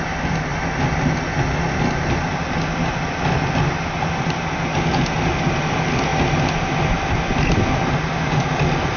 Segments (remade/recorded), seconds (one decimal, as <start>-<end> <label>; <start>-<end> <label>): 0.0-9.0 recorded